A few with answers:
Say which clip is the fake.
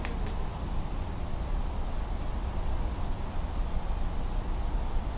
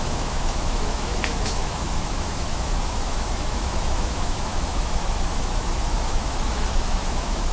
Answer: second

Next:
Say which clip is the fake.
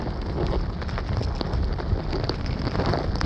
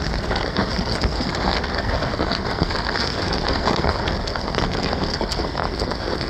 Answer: second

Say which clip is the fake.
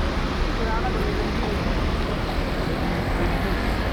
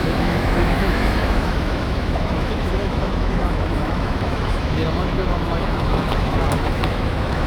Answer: second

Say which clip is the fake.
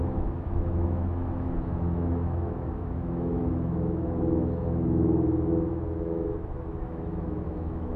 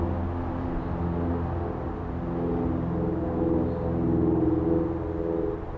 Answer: first